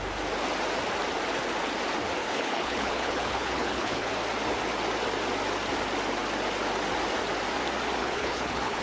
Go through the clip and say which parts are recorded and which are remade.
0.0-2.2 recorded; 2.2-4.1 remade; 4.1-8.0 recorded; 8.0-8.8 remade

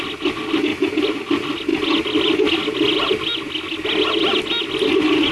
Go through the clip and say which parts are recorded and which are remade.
0.0-5.3 recorded

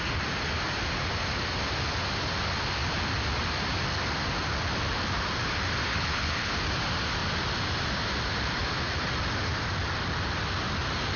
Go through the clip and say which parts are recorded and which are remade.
0.0-5.9 recorded; 5.9-6.5 remade; 6.5-11.2 recorded

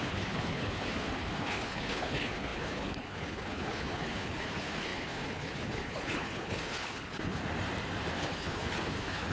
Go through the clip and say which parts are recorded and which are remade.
0.0-7.4 remade; 7.4-8.1 recorded; 8.1-9.3 remade

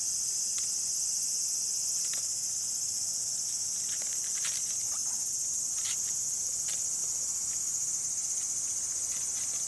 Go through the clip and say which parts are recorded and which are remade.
0.0-9.7 recorded

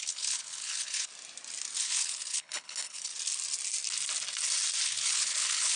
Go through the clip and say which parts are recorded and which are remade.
0.0-1.1 remade; 1.1-1.8 recorded; 1.8-3.1 remade; 3.1-4.8 recorded; 4.8-5.8 remade